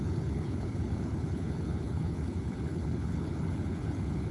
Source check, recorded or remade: remade